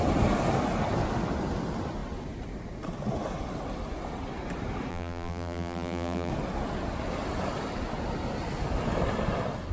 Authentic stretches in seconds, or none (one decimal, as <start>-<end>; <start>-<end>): 0.0-4.9; 6.3-9.7